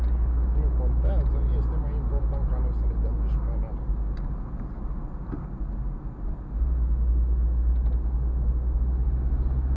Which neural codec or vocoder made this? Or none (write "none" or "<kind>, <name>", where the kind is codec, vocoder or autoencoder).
none